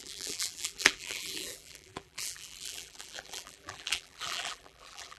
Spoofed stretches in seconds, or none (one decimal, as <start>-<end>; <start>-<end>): 0.0-5.2